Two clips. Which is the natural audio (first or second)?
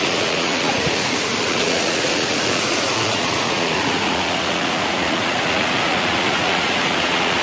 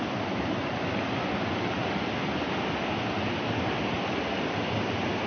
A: second